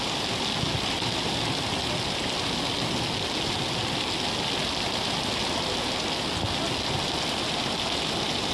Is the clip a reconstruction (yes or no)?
no